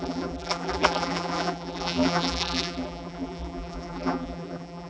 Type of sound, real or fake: fake